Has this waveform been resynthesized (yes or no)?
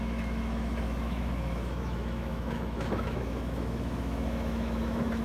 yes